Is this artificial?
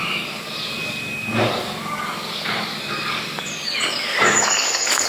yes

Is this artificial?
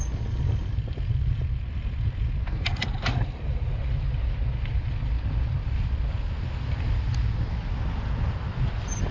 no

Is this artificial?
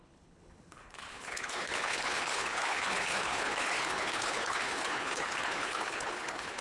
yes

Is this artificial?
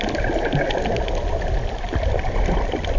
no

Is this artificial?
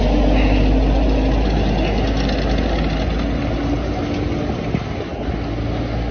no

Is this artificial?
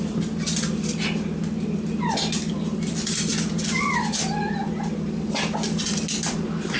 no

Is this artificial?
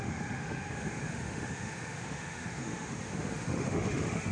yes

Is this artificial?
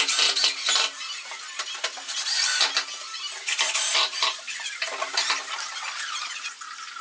no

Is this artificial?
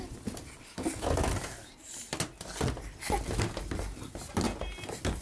no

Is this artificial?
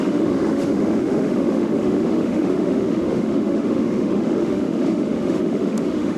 yes